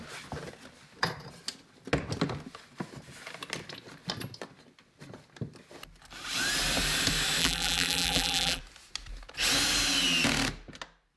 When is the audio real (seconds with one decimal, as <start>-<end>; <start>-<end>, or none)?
0.0-7.4; 8.6-11.2